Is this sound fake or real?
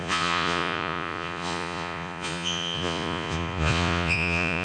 fake